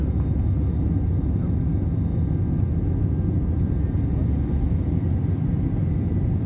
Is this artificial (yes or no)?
no